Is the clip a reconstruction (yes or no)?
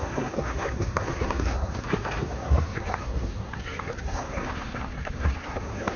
yes